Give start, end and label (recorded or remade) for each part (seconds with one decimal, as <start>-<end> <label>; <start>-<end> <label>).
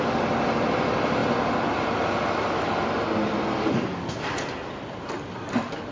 0.0-5.9 recorded